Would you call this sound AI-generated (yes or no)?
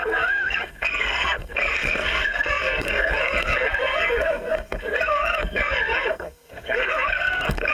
yes